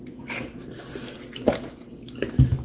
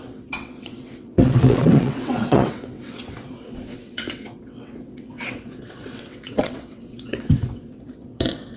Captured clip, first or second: first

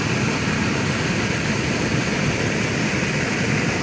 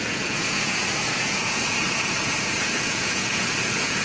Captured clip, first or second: first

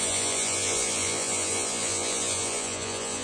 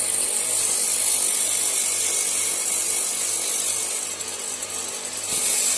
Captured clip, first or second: second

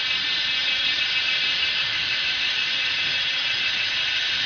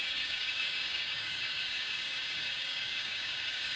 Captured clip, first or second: first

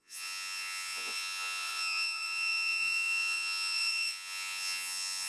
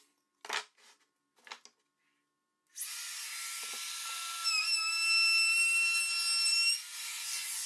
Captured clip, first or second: second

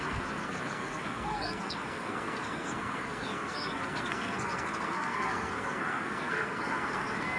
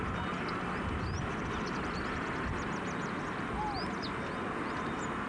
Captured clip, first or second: second